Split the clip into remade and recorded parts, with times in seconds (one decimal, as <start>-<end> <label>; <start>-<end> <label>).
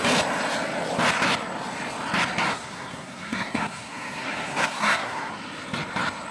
0.0-2.5 recorded; 2.5-5.3 remade; 5.3-6.3 recorded